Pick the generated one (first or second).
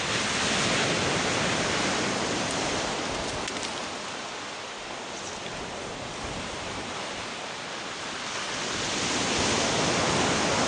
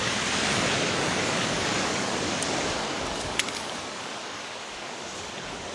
second